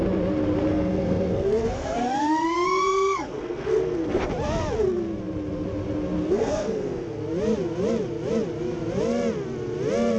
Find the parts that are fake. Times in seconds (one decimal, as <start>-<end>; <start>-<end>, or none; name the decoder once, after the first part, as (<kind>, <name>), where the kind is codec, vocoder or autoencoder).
0.7-4.3 (codec, SNAC); 6.2-7.2